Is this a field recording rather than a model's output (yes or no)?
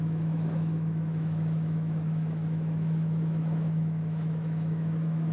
no